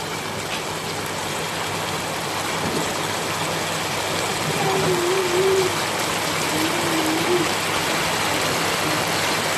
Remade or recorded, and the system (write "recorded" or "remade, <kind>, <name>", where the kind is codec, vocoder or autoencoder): recorded